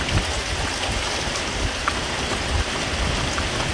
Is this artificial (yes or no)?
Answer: no